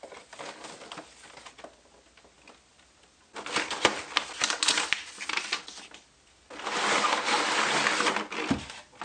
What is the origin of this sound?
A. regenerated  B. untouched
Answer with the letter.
B